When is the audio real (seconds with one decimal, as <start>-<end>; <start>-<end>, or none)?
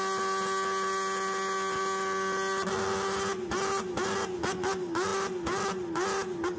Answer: 0.0-6.6